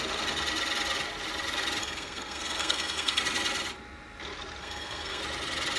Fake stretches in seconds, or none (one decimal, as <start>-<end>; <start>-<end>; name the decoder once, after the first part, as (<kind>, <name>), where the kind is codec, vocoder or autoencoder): 1.8-3.2 (codec, SNAC); 4.6-5.2